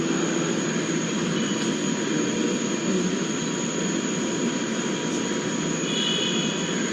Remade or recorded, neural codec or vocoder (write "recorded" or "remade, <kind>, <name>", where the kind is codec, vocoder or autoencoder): recorded